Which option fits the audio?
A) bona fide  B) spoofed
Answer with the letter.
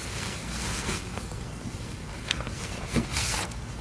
B